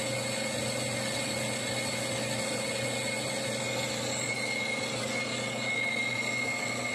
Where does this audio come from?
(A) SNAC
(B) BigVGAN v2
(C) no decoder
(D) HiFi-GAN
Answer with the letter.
C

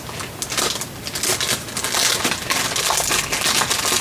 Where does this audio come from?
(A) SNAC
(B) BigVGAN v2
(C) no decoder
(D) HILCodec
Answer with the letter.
C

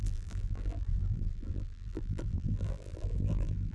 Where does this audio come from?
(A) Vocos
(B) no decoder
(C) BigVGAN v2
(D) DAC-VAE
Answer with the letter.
C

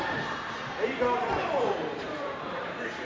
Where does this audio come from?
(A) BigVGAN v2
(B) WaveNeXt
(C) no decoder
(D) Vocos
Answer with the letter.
A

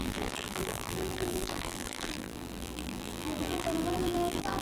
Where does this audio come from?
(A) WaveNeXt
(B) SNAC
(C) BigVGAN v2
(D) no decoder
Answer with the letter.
C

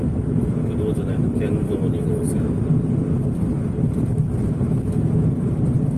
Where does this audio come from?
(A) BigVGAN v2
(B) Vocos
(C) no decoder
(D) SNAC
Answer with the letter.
C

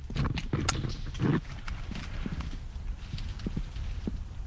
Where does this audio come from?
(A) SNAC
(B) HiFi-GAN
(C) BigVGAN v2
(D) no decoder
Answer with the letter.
D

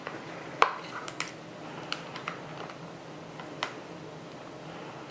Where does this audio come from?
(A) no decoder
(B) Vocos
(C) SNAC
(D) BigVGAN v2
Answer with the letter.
D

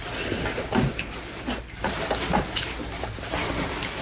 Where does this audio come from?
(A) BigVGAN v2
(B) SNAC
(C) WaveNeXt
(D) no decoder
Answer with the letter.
D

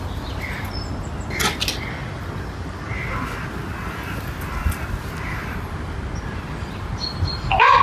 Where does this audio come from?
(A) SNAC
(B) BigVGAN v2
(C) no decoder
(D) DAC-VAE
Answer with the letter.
C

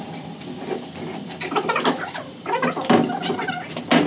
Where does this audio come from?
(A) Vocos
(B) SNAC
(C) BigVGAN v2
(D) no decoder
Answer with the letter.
D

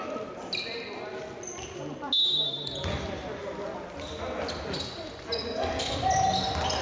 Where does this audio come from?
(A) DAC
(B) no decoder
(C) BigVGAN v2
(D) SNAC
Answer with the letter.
B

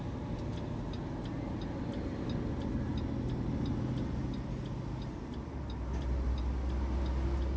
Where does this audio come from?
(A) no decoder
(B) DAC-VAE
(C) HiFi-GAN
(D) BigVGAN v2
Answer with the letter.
A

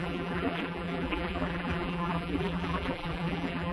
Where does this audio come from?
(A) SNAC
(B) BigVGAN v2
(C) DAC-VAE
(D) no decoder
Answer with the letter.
B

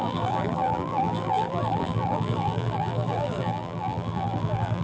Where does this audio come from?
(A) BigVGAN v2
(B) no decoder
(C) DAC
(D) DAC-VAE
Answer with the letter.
A